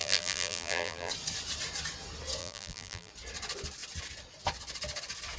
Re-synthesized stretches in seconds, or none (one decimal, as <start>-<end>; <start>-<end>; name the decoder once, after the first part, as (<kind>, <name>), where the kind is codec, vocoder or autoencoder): 0.0-1.1 (vocoder, BigVGAN v2); 2.4-3.1